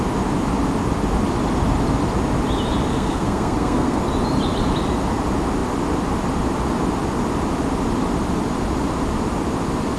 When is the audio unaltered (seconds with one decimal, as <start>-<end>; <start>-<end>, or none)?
0.0-2.9; 4.0-10.0